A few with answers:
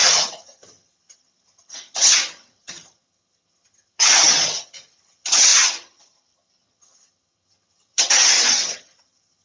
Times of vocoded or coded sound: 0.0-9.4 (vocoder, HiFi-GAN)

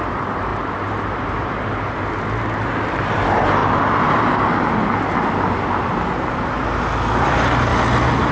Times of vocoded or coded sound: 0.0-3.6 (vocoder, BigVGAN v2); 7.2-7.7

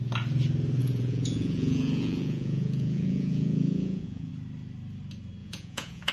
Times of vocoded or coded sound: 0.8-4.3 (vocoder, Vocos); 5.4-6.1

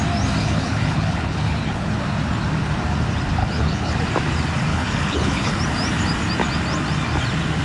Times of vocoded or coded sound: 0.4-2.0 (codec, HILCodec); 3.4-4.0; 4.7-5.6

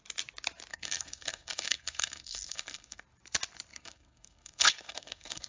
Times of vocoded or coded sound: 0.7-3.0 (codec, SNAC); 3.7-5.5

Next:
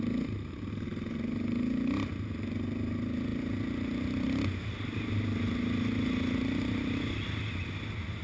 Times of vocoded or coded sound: none

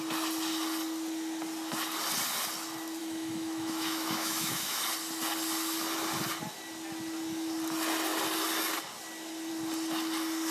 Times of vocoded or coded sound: 3.0-4.8 (autoencoder, DAC-VAE)

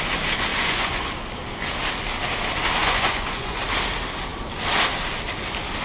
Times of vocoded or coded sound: 0.5-1.1 (vocoder, Vocos); 2.8-3.6